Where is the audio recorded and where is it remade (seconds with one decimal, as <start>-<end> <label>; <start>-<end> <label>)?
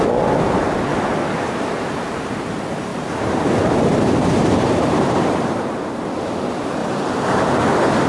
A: 0.0-0.9 recorded; 0.9-2.5 remade; 2.5-2.9 recorded; 2.9-5.3 remade; 5.3-6.8 recorded; 6.8-7.5 remade; 7.5-8.1 recorded